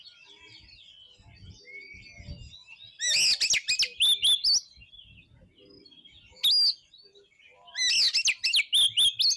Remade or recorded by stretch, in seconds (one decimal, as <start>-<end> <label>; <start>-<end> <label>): 0.0-9.4 recorded